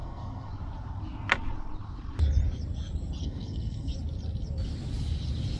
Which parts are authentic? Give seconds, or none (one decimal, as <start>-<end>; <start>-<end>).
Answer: 0.5-3.2; 3.9-5.6